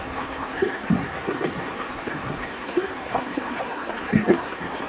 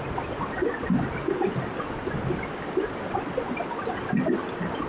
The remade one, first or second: first